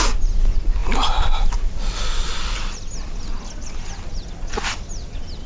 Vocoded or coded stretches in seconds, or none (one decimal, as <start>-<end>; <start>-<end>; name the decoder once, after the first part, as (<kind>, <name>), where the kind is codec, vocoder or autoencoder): none